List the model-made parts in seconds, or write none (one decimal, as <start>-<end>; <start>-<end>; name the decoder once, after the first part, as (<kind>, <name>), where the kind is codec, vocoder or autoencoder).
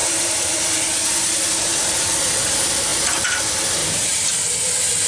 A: 0.0-0.6 (vocoder, BigVGAN v2); 2.9-3.4; 3.8-4.4